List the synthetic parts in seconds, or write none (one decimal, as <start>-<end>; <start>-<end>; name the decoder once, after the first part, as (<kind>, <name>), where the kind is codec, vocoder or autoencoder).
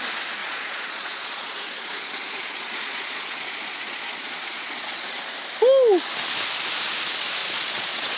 0.4-5.3 (vocoder, Vocos); 7.4-8.2